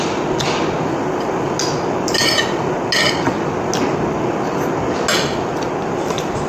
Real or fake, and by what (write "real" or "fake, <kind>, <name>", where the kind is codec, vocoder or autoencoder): real